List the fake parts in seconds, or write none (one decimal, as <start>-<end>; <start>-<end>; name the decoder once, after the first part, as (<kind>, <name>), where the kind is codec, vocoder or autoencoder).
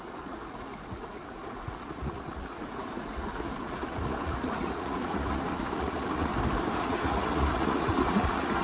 0.0-6.3 (vocoder, Vocos); 6.8-8.6